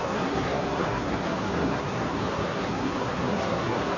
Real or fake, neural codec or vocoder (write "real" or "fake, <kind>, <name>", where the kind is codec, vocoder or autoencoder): fake, codec, SNAC